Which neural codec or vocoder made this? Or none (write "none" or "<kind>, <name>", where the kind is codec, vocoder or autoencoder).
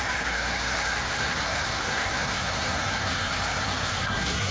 codec, SNAC